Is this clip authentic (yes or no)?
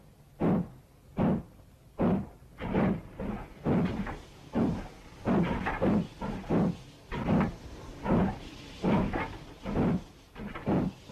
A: yes